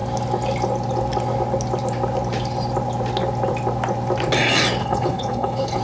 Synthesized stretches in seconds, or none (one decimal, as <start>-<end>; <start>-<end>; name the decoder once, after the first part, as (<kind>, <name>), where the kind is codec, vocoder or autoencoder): 4.8-5.8 (codec, HILCodec)